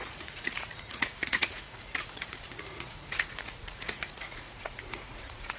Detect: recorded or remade remade